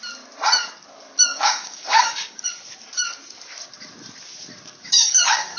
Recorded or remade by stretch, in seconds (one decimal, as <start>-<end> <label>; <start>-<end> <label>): 0.0-1.3 recorded; 1.3-2.4 remade; 2.4-4.8 recorded; 4.8-5.6 remade